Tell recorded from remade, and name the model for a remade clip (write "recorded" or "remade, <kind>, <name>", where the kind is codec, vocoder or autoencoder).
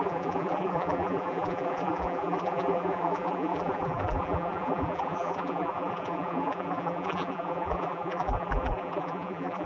remade, vocoder, BigVGAN v2